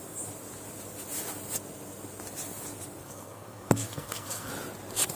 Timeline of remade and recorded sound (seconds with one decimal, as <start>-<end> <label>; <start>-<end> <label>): 0.0-3.0 recorded; 3.0-4.5 remade; 4.5-5.1 recorded

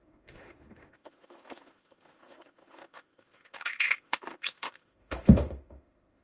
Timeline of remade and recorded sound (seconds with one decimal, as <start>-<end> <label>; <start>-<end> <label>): 0.0-6.2 remade

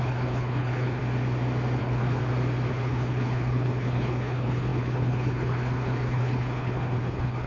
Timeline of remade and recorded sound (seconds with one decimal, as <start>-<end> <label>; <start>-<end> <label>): 0.0-1.0 remade; 1.0-1.8 recorded; 1.8-2.2 remade; 2.2-2.7 recorded; 2.7-7.5 remade

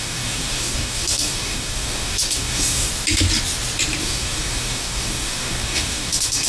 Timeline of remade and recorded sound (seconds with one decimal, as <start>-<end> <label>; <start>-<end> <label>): 0.0-2.9 remade; 2.9-4.0 recorded; 4.0-6.5 remade

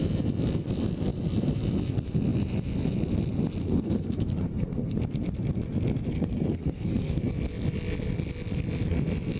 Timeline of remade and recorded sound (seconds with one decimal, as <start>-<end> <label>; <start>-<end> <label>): 0.0-3.6 recorded; 3.6-5.0 remade; 5.0-6.1 recorded; 6.1-7.2 remade; 7.2-9.4 recorded

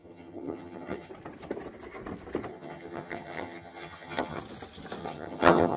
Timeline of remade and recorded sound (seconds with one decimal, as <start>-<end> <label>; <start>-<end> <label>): 0.0-1.1 remade; 1.1-2.5 recorded; 2.5-4.4 remade; 4.4-5.0 recorded; 5.0-5.8 remade

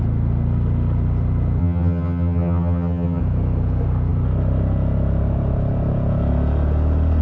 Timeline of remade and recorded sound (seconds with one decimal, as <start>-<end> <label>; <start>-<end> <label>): 0.0-1.6 recorded; 1.6-3.2 remade; 3.2-7.2 recorded

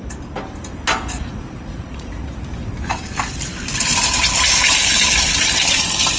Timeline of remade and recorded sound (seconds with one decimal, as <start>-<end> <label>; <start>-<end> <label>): 0.0-1.3 recorded; 1.3-2.5 remade; 2.5-6.2 recorded